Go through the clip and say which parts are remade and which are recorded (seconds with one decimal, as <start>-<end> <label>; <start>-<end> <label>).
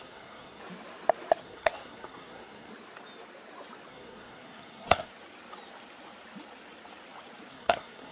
0.0-0.6 remade; 0.6-1.4 recorded; 1.4-2.7 remade; 2.7-3.9 recorded; 3.9-5.1 remade; 5.1-7.5 recorded; 7.5-8.1 remade